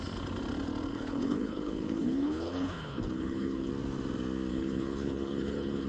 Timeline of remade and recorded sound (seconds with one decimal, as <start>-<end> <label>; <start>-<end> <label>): 0.0-0.9 recorded; 0.9-3.7 remade; 3.7-4.5 recorded; 4.5-5.9 remade